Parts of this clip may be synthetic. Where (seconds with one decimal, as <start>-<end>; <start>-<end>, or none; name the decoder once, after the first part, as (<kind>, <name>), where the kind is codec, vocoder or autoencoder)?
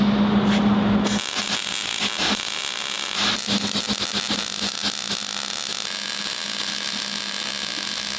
none